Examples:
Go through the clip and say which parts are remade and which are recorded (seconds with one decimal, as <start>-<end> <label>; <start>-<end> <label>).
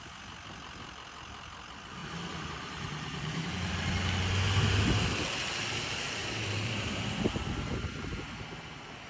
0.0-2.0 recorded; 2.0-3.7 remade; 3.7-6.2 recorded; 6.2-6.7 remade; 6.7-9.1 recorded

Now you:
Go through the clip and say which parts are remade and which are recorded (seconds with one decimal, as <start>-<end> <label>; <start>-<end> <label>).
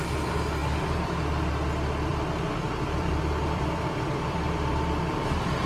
0.0-2.1 recorded; 2.1-5.7 remade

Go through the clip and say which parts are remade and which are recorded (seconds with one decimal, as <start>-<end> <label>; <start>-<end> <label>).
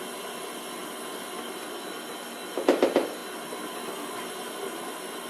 0.0-5.3 recorded